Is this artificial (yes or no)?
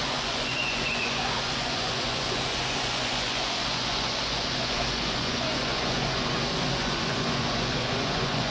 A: yes